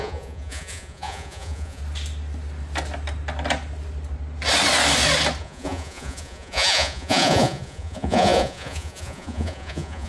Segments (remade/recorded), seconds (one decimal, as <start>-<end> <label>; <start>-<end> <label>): 0.0-1.8 remade; 1.8-5.4 recorded; 5.4-10.1 remade